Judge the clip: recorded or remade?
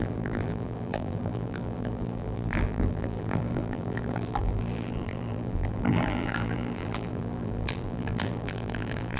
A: remade